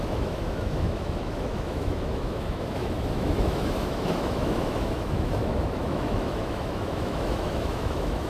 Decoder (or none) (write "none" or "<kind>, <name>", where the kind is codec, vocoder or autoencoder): autoencoder, DAC-VAE